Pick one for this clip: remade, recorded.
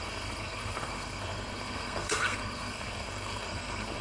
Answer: remade